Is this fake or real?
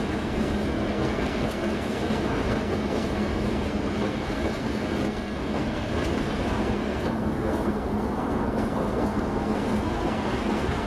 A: fake